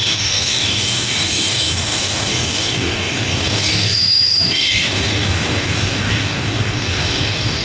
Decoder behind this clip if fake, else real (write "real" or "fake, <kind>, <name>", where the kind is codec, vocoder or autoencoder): fake, codec, DAC